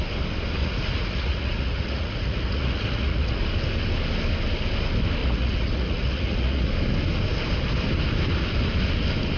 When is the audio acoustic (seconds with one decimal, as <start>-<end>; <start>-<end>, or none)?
0.0-0.6; 3.4-5.2; 6.7-9.4